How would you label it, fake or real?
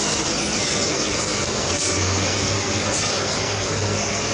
fake